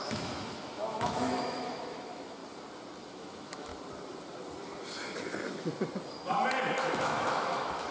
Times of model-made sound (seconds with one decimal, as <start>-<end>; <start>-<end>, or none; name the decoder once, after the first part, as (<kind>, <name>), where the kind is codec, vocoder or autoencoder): 0.0-2.4 (autoencoder, DAC-VAE); 3.1-3.7; 6.8-7.9